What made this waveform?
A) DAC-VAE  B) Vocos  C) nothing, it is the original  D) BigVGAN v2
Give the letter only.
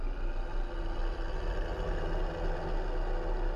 C